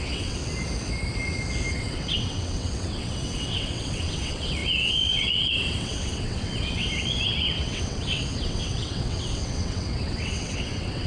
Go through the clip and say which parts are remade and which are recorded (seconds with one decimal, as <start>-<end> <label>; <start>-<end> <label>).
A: 0.0-0.4 remade; 0.4-1.7 recorded; 1.7-11.1 remade